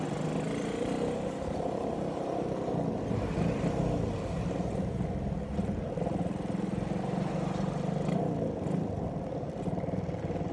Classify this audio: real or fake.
real